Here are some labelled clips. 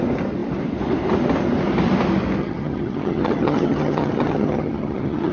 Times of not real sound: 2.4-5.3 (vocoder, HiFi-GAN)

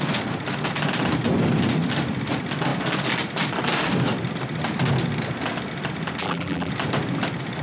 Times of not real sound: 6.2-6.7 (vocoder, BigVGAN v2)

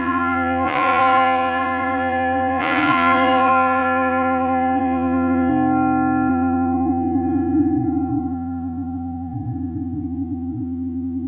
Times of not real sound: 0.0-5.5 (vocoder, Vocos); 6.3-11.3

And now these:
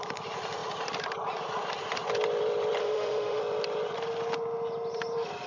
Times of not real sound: 2.8-3.4 (autoencoder, DAC-VAE)

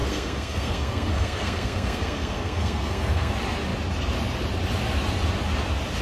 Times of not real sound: 0.0-3.3 (codec, SNAC)

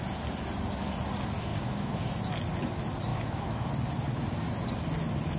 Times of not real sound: 1.5-2.0 (autoencoder, DAC-VAE); 3.1-3.7